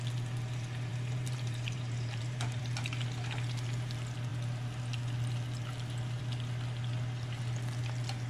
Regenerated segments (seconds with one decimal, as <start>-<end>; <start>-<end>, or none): 0.9-2.6